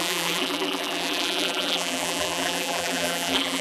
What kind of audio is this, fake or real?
fake